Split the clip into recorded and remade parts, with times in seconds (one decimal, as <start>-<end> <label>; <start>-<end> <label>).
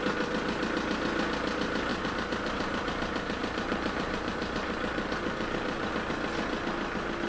0.0-1.9 recorded; 1.9-5.9 remade; 5.9-7.3 recorded